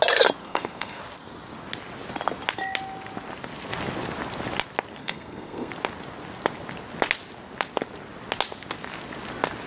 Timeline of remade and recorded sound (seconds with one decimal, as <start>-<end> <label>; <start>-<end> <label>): 0.0-0.4 recorded; 0.4-1.0 remade; 1.0-5.0 recorded; 5.0-5.7 remade; 5.7-9.7 recorded